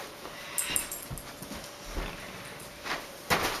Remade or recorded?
recorded